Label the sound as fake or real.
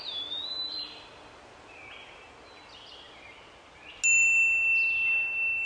real